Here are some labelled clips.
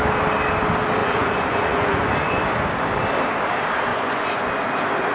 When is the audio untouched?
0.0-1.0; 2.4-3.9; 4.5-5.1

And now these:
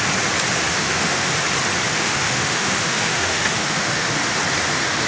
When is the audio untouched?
0.0-0.7; 1.3-1.9; 4.1-5.1

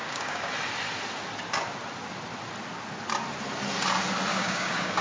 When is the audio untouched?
0.5-4.3

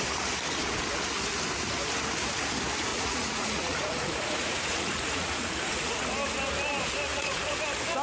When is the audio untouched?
0.0-2.9; 6.0-7.1; 7.6-8.0

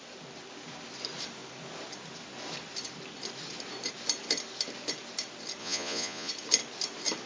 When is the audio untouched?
0.0-5.6; 6.3-7.3

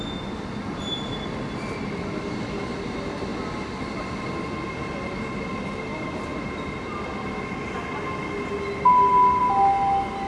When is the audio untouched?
0.0-10.3